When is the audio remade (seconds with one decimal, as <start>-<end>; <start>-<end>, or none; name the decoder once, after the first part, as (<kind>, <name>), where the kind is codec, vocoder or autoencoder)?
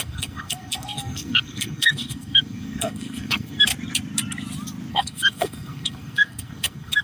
0.0-3.7 (codec, SNAC); 4.9-7.0